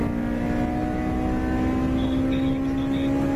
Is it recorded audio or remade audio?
recorded